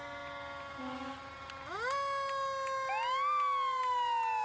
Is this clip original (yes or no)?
yes